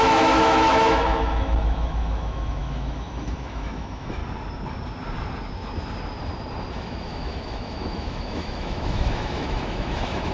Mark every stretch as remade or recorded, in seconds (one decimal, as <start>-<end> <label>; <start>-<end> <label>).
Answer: 0.0-4.2 remade; 4.2-6.7 recorded; 6.7-10.3 remade

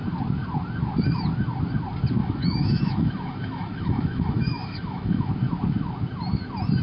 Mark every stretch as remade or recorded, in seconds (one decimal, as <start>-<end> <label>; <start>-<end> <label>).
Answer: 0.0-2.2 recorded; 2.2-5.3 remade; 5.3-6.8 recorded

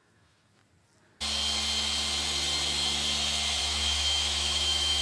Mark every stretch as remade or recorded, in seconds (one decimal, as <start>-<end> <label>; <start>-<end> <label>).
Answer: 0.0-0.6 remade; 0.6-3.6 recorded; 3.6-5.0 remade

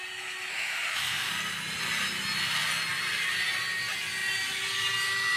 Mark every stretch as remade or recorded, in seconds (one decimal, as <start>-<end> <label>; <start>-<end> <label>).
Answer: 0.0-0.5 recorded; 0.5-1.3 remade; 1.3-5.4 recorded

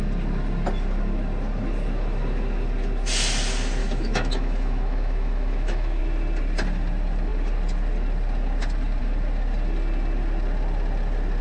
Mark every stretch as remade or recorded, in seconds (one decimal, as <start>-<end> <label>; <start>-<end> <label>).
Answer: 0.0-3.8 recorded; 3.8-6.0 remade; 6.0-11.4 recorded